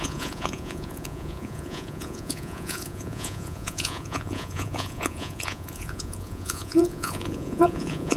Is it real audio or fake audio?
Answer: fake